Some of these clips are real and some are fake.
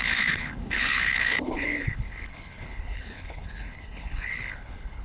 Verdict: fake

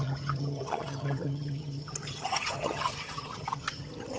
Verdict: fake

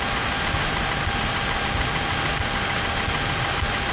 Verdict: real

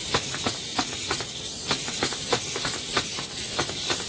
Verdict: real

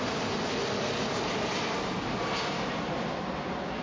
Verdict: real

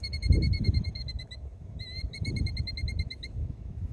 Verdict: fake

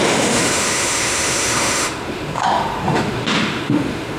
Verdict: fake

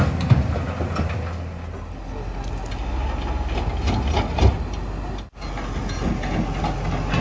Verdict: real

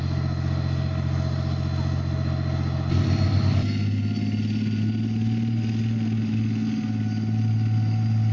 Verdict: real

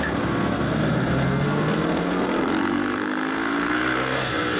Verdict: fake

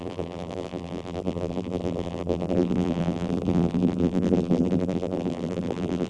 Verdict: fake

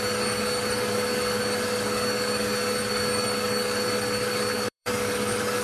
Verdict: fake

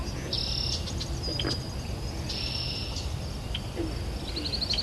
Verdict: real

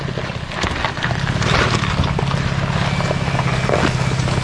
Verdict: real